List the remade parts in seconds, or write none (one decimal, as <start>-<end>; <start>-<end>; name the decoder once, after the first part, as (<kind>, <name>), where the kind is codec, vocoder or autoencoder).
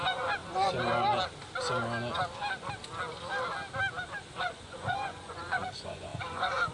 0.0-0.4 (vocoder, Vocos); 4.4-6.7